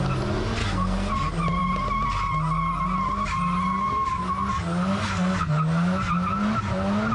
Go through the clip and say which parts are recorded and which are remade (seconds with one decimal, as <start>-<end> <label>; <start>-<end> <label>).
0.0-0.6 recorded; 0.6-1.1 remade; 1.1-4.9 recorded; 4.9-5.5 remade; 5.5-7.1 recorded